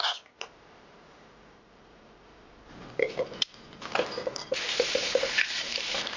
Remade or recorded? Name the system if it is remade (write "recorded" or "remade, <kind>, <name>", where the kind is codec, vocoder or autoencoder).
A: remade, vocoder, BigVGAN v2